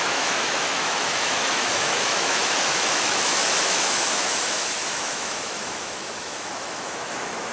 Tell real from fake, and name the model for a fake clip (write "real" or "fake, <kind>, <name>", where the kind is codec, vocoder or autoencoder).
fake, autoencoder, DAC-VAE